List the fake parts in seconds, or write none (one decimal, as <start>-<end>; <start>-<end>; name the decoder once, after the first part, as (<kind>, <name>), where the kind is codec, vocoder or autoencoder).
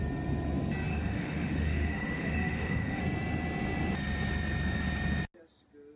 0.9-3.0 (autoencoder, DAC-VAE)